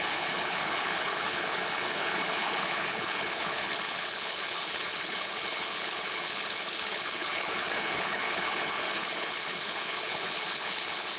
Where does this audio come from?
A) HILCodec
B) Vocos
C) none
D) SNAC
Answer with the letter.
A